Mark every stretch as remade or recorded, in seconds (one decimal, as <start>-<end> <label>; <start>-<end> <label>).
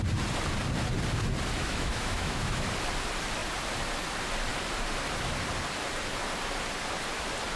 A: 0.0-1.6 recorded; 1.6-2.7 remade; 2.7-7.6 recorded